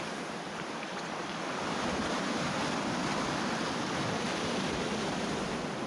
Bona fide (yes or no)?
yes